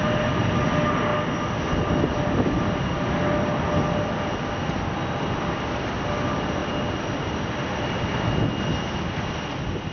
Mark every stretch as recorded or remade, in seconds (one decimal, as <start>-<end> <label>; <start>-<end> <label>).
0.0-9.9 recorded